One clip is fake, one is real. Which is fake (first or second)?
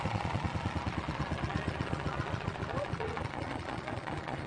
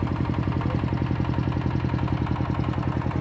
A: first